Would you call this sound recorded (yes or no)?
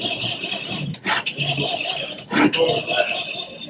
yes